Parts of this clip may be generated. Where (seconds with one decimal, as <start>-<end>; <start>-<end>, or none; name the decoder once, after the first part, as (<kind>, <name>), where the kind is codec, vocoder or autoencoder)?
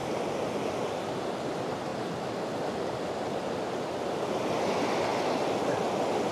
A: none